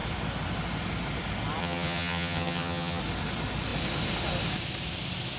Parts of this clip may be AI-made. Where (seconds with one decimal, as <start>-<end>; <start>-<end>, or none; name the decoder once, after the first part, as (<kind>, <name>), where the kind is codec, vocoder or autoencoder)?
1.6-3.0 (vocoder, HiFi-GAN)